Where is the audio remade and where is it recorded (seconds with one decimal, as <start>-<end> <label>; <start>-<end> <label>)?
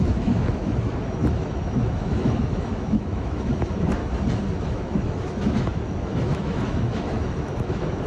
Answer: 0.0-4.0 remade; 4.0-4.6 recorded; 4.6-8.1 remade